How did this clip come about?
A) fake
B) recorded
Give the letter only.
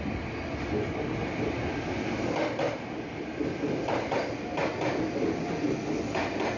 B